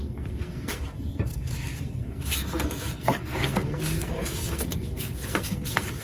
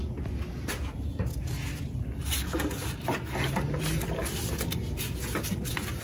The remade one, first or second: first